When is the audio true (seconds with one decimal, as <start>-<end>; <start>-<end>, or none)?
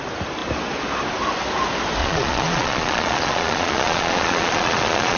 0.0-2.0